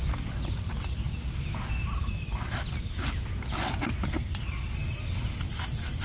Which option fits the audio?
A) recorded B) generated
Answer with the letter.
A